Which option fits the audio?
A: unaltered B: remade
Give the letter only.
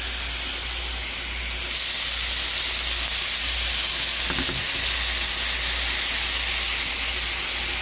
A